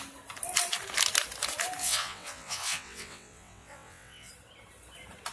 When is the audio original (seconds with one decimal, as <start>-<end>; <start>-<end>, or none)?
0.0-1.8; 4.3-5.3

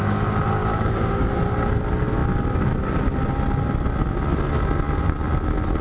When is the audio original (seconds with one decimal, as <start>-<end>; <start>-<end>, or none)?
0.0-0.6; 1.3-5.8